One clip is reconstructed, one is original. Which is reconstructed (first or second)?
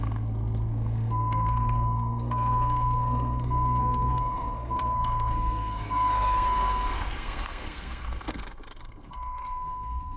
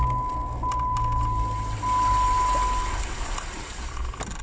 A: first